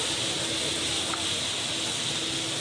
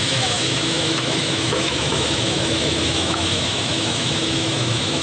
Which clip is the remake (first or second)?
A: second